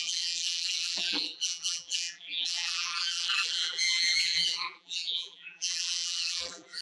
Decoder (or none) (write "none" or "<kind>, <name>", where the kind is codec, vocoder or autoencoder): vocoder, BigVGAN v2